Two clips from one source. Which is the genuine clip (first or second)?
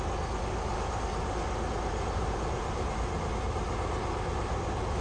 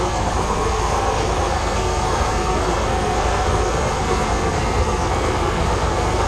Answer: first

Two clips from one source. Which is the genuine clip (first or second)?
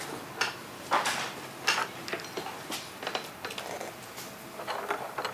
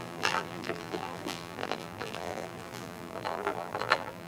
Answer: first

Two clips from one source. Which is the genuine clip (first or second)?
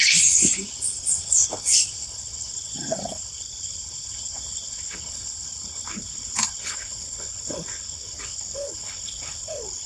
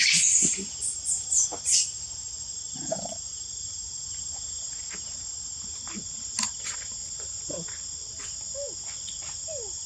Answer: second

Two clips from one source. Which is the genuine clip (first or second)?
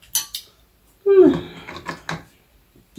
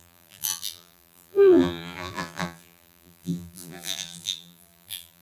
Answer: first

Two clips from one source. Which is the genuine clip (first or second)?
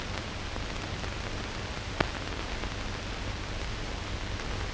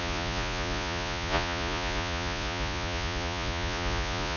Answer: first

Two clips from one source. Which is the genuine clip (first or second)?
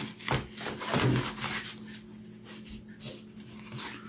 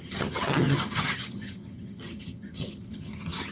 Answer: first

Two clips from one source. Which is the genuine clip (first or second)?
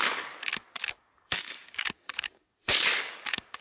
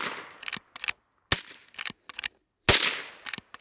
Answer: second